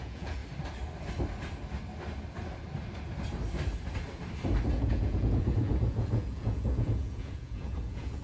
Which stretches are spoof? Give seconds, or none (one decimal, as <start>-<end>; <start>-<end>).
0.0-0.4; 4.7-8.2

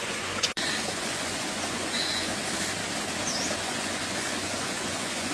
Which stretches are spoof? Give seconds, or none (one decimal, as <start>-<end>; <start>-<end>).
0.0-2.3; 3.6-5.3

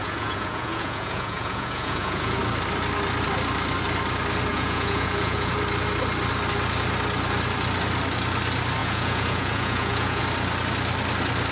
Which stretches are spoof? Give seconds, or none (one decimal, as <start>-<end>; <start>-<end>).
0.0-2.4; 4.5-5.5; 8.8-10.2

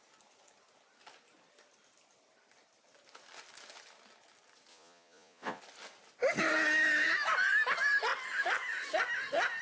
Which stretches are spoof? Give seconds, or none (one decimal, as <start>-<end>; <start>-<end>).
4.7-5.6

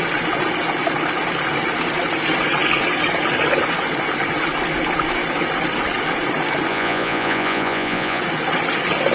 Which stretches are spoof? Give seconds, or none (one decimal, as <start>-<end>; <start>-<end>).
6.7-8.2

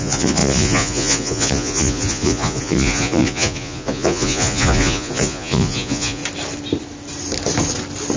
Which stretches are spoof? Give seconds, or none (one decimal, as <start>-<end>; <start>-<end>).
0.0-6.2

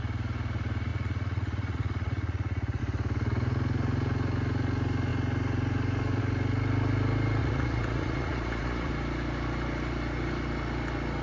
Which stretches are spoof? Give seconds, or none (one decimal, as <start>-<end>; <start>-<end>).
0.9-2.8; 7.4-8.9